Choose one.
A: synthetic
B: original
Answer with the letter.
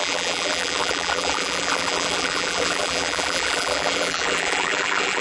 A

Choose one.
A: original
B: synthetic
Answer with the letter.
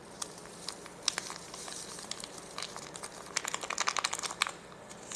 A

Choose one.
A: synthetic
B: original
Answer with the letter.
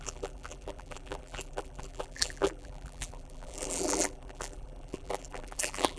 A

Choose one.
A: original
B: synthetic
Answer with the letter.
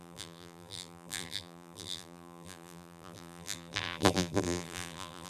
B